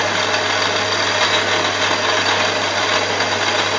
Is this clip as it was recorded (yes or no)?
yes